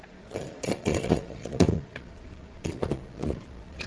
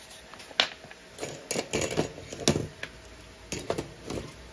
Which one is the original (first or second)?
second